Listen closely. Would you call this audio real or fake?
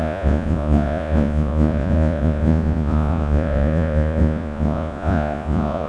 fake